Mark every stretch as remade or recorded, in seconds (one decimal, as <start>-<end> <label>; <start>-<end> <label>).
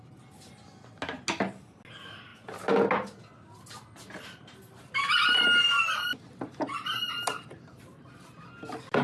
0.0-9.0 recorded